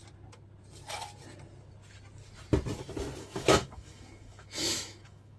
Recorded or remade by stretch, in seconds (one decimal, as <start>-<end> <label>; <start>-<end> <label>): 0.0-3.2 recorded; 3.2-5.4 remade